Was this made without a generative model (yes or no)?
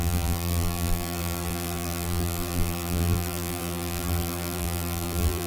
no